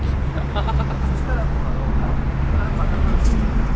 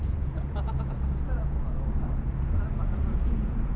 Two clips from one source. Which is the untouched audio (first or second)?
first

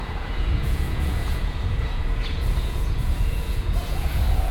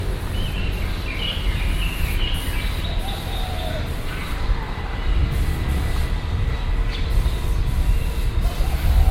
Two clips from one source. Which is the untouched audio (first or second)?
second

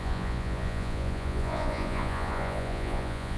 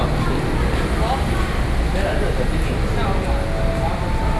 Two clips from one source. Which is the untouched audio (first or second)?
second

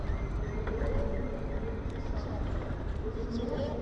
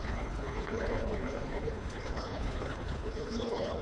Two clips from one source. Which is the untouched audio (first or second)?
first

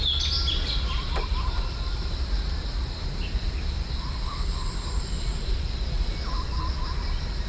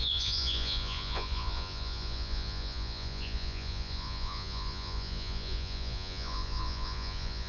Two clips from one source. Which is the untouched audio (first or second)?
first